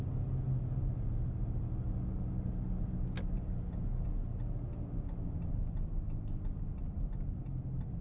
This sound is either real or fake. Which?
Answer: real